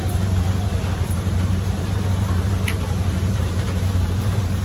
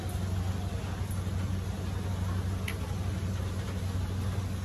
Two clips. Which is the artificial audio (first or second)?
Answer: first